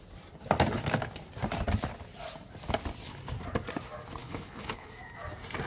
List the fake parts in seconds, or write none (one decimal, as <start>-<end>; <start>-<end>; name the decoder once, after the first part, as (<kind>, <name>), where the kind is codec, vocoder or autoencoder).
4.2-4.9 (codec, HILCodec)